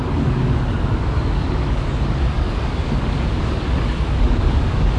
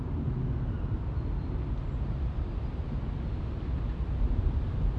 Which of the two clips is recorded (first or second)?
second